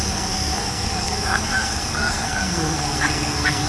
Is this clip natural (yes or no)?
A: no